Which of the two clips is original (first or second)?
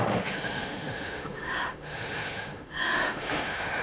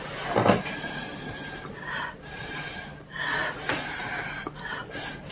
second